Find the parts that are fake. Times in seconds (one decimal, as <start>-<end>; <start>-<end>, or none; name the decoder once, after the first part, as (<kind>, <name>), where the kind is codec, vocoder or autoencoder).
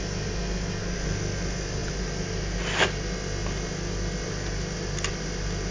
none